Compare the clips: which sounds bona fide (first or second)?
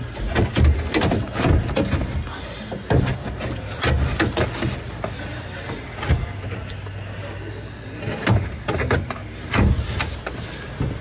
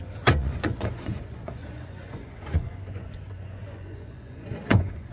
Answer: first